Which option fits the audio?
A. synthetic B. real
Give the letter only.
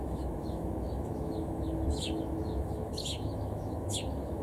A